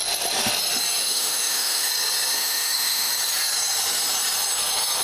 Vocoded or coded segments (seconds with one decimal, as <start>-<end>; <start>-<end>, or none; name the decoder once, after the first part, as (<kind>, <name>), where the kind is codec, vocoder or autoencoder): 1.0-1.9 (autoencoder, DAC-VAE); 2.3-3.1